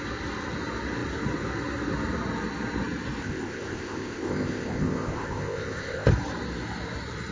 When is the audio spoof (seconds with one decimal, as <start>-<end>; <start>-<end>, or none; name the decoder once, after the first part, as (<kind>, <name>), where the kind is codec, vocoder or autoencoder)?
3.2-6.1 (codec, ZipCodec)